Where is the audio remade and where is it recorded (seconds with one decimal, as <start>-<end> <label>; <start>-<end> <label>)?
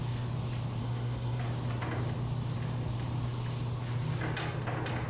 0.0-0.8 recorded; 0.8-1.4 remade; 1.4-5.1 recorded